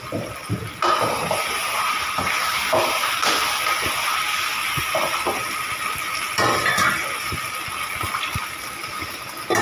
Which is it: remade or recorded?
recorded